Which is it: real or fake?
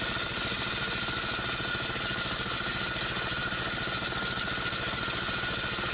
real